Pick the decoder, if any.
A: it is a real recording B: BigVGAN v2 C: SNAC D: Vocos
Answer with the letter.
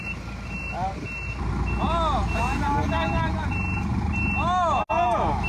A